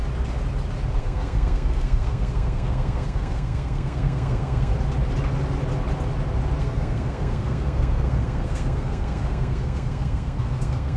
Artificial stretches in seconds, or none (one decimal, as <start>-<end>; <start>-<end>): 1.0-4.7; 6.6-11.0